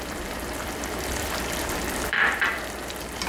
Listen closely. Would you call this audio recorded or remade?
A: remade